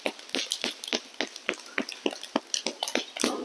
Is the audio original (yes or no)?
yes